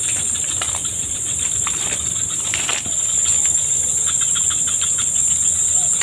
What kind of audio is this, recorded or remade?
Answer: recorded